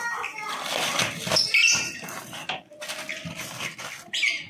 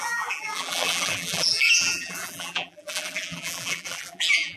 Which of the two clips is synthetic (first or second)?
second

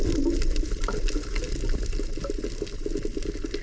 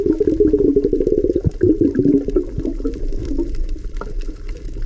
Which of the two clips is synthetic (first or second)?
second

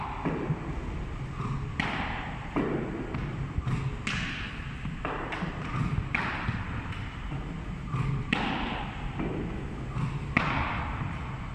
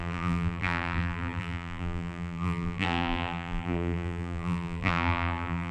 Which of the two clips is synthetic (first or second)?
second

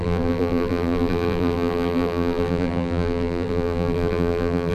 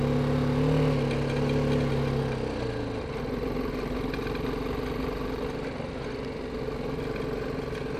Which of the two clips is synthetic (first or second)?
first